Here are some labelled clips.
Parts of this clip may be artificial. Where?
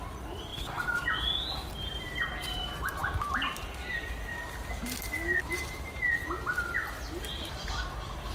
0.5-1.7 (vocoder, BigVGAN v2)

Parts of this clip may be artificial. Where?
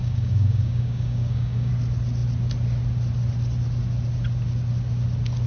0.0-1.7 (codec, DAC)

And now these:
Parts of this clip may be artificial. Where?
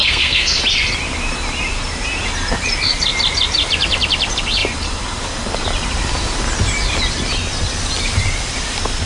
0.0-0.6 (codec, SNAC)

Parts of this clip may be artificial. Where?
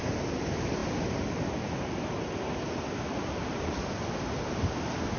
none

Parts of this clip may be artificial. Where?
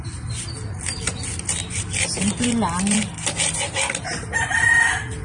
1.6-4.7 (vocoder, BigVGAN v2)